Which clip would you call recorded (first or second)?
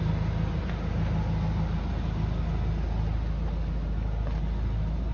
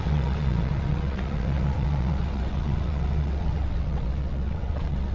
first